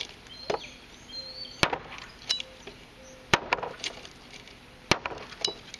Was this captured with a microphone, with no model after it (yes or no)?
yes